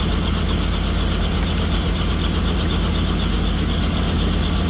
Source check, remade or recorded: recorded